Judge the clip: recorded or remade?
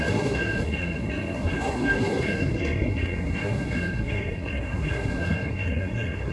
remade